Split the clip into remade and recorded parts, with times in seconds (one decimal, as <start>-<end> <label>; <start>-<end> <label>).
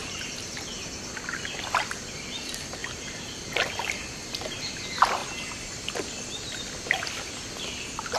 0.0-0.6 remade; 0.6-2.8 recorded; 2.8-3.7 remade; 3.7-4.2 recorded; 4.2-4.7 remade; 4.7-8.2 recorded